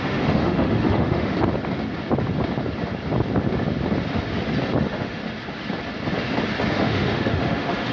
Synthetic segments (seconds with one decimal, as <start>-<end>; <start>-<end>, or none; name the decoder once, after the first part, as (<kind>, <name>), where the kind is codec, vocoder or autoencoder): 0.0-1.3 (autoencoder, DAC-VAE); 4.8-5.2; 6.7-7.9